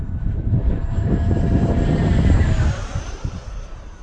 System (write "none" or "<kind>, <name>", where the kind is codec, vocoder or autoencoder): vocoder, BigVGAN v2